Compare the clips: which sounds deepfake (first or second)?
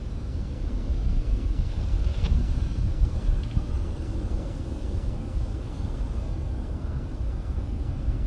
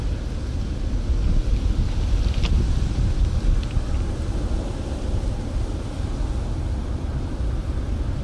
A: first